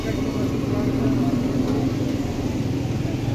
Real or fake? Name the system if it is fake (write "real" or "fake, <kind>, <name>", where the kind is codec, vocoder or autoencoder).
real